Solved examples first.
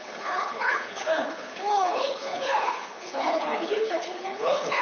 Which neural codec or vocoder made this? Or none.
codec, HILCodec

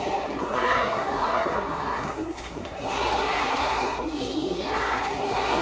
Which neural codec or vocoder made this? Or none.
codec, SNAC